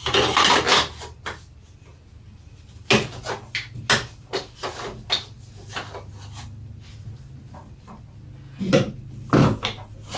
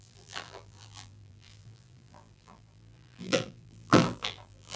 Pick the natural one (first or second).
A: first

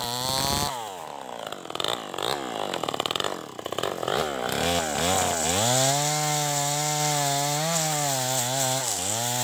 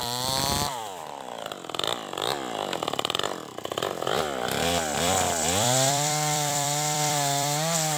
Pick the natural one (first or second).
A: first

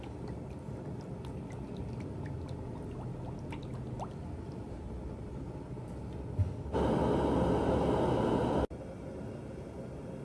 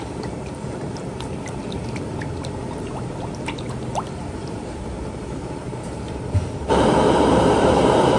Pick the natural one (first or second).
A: first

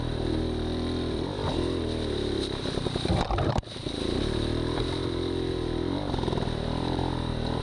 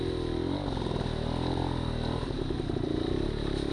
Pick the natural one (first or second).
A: second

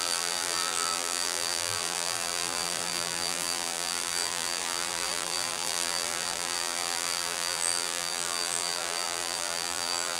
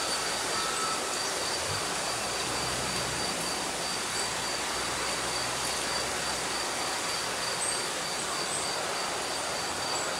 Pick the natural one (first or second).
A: second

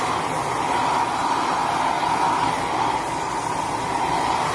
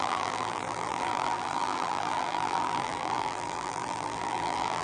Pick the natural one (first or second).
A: first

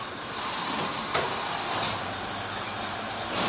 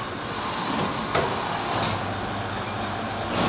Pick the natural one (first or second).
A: second